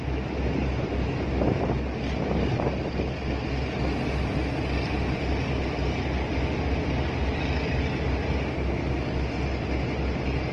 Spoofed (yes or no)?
no